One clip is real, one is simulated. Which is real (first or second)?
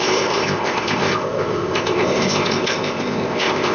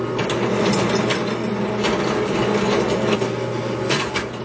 second